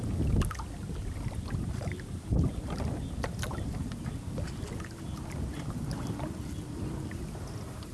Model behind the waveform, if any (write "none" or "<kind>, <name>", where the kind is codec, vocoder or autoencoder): none